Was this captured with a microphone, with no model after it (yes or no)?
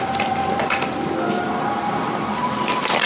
yes